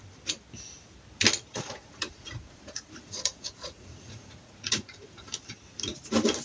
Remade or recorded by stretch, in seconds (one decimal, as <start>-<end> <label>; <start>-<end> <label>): 0.0-1.5 recorded; 1.5-5.3 remade; 5.3-6.4 recorded